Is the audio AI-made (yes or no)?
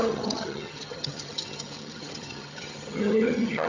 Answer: yes